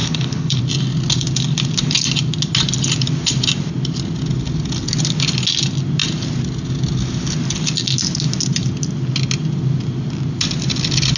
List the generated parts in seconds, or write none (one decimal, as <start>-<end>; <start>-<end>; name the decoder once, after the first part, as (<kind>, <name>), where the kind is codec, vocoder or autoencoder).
0.0-0.6 (codec, HILCodec)